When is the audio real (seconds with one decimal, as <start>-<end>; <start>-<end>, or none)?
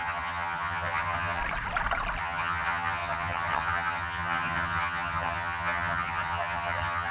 1.4-2.2